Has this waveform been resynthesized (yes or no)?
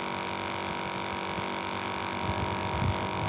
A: no